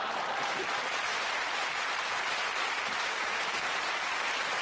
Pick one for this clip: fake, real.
fake